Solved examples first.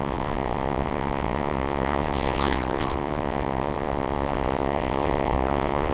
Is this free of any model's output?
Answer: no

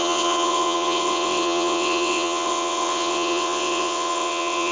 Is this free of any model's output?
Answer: no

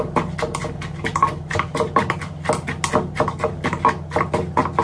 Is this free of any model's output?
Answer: yes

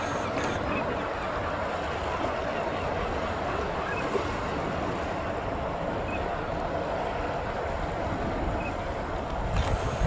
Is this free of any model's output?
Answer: yes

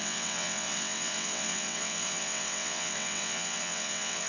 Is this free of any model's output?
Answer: no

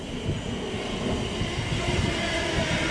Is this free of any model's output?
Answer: yes